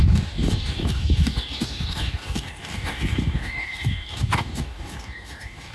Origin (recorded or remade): remade